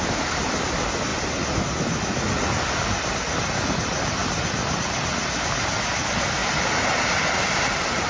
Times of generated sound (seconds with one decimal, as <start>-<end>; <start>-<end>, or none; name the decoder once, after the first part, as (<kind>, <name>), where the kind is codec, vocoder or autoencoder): 1.1-1.6 (vocoder, BigVGAN v2); 6.4-8.1